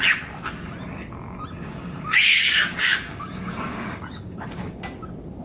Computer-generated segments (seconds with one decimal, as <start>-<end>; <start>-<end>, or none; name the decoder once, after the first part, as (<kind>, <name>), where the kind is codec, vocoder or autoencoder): 1.6-4.8 (codec, DAC)